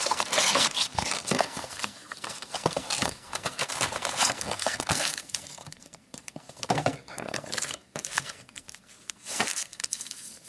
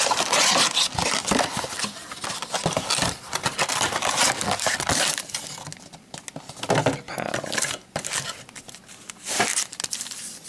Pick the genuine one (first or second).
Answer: second